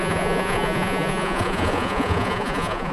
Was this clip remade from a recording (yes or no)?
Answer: yes